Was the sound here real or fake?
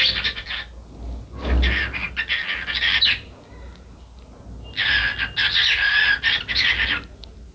real